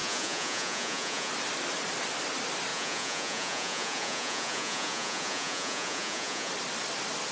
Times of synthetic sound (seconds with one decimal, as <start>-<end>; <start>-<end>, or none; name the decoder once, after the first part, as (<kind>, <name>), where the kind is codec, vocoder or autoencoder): 0.0-1.3 (vocoder, Vocos); 2.7-6.5